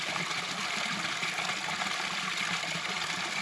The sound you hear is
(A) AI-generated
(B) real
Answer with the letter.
B